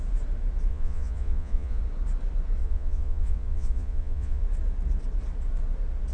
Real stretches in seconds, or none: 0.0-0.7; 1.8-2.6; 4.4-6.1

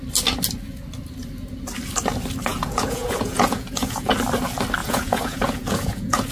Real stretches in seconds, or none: 0.0-2.5; 4.1-4.8

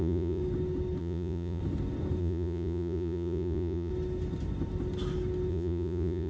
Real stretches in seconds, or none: 0.4-1.0; 1.6-2.2; 3.9-5.5

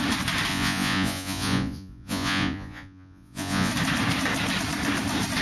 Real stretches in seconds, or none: 0.0-0.5; 3.7-5.4

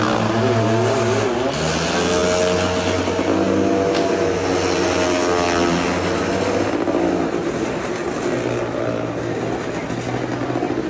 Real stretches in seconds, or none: 0.0-10.9

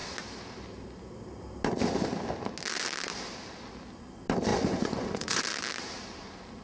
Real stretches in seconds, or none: 0.0-4.5; 5.4-6.6

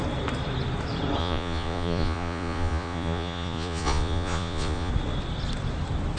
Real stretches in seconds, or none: 0.0-1.2; 4.9-6.2

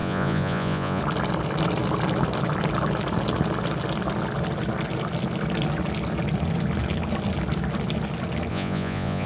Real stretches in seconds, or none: 1.0-8.5